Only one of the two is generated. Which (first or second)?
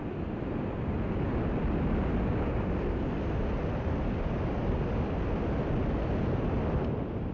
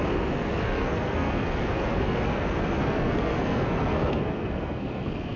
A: second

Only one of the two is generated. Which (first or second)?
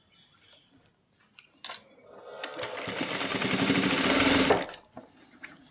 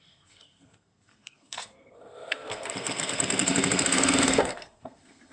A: second